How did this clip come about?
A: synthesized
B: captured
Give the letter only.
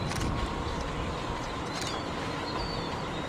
A